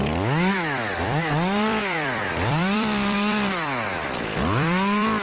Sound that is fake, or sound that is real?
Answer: fake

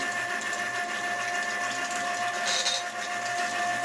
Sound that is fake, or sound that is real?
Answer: real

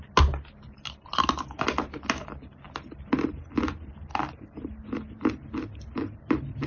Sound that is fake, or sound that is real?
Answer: real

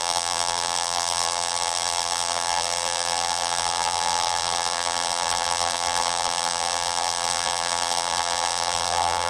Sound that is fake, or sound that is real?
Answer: fake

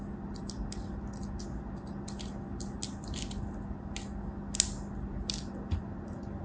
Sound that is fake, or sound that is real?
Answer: real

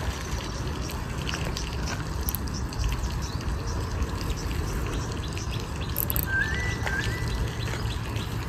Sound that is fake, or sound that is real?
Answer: real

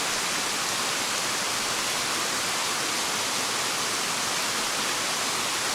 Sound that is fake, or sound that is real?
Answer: real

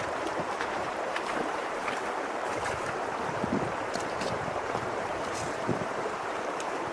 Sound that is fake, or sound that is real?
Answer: fake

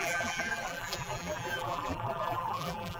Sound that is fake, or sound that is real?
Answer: fake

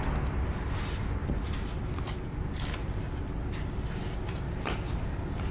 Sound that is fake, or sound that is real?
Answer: real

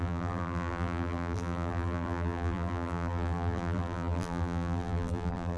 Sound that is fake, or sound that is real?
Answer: fake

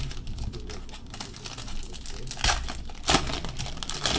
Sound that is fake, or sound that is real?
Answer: real